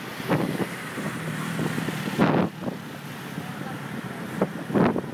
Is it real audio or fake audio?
real